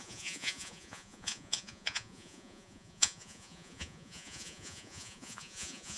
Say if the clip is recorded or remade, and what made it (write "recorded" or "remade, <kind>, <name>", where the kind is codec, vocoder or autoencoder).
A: remade, vocoder, Vocos